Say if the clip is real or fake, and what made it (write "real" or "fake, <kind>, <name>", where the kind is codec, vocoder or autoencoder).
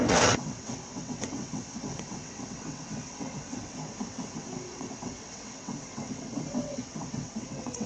fake, vocoder, WaveNeXt